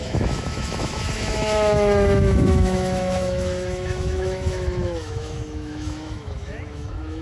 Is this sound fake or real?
fake